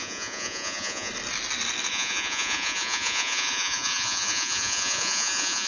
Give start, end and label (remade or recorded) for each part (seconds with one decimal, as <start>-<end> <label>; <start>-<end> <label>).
0.0-1.1 remade; 1.1-1.9 recorded; 1.9-5.7 remade